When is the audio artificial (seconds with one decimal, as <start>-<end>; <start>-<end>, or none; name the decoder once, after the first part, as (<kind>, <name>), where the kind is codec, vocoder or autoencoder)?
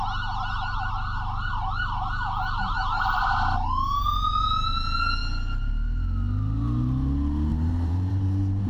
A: 7.5-8.7 (vocoder, BigVGAN v2)